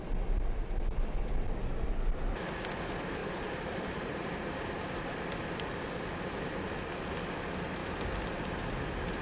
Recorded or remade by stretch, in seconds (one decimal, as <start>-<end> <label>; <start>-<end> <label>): 0.0-3.2 recorded; 3.2-4.3 remade; 4.3-7.8 recorded; 7.8-8.5 remade; 8.5-9.2 recorded